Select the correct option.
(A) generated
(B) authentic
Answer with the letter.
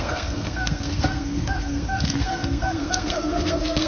A